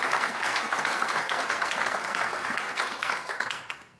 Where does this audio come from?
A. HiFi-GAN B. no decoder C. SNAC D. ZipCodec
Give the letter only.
C